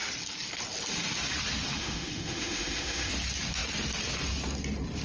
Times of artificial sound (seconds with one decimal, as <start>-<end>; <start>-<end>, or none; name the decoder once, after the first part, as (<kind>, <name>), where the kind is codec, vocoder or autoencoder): 1.8-3.1 (autoencoder, DAC-VAE)